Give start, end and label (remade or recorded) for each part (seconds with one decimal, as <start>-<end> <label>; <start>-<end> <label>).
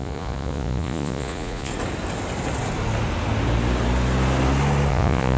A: 0.0-1.7 remade; 1.7-4.9 recorded; 4.9-5.4 remade